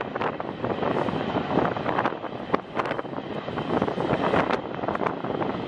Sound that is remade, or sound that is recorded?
recorded